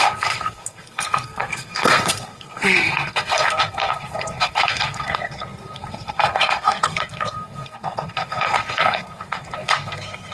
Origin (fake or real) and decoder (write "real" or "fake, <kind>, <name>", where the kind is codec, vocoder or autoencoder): fake, codec, SNAC